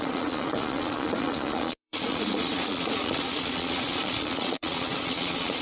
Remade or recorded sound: remade